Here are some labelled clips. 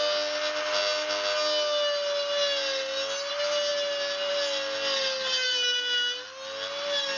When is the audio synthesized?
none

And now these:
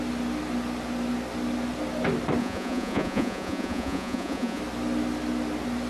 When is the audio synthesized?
2.4-4.6 (vocoder, Vocos)

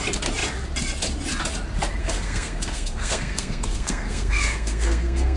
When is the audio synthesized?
2.0-5.4 (codec, SNAC)